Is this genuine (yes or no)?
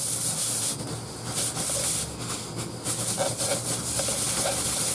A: yes